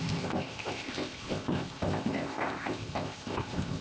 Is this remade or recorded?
remade